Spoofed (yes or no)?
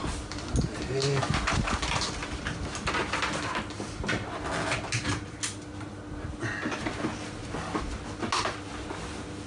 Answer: no